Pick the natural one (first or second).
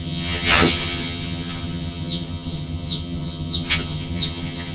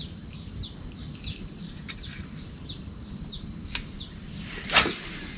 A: second